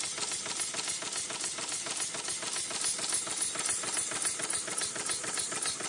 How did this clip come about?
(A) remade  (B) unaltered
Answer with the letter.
B